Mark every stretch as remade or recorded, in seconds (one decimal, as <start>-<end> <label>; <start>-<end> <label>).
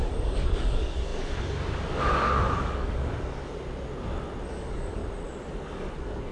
0.0-3.5 remade; 3.5-4.5 recorded; 4.5-5.0 remade; 5.0-5.5 recorded; 5.5-6.3 remade